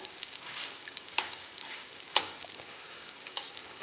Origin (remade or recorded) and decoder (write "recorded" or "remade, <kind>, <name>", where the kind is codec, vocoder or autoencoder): remade, codec, DAC